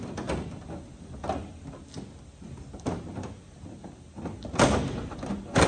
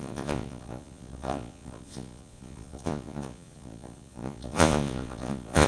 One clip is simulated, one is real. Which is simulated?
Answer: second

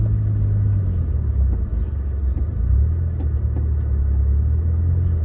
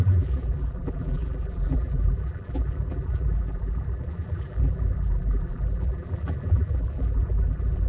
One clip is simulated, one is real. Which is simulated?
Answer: second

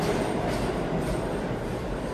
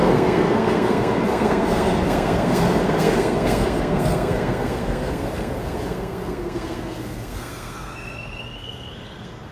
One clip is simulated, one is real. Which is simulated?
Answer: second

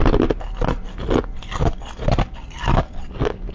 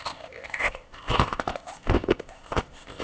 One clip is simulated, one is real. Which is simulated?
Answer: second